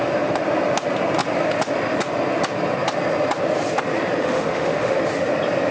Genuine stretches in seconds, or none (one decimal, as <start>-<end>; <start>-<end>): 0.0-4.2; 5.0-5.7